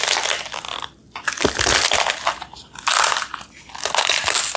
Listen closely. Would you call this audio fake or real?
real